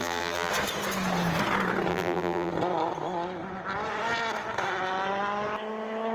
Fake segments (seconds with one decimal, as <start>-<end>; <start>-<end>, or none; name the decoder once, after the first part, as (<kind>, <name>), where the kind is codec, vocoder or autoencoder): 0.0-0.5 (vocoder, BigVGAN v2); 1.9-2.5